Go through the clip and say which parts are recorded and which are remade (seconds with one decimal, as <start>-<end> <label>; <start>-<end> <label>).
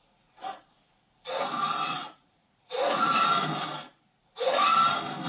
0.0-1.9 recorded; 1.9-3.2 remade; 3.2-5.3 recorded